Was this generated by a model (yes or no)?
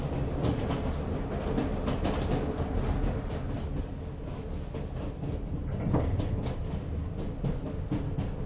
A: no